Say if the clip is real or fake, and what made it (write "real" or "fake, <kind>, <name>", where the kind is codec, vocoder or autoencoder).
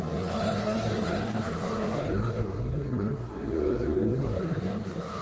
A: fake, codec, SNAC